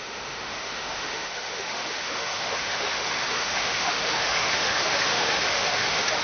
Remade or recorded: remade